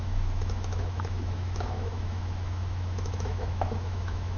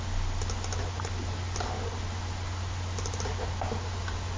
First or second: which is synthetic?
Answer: first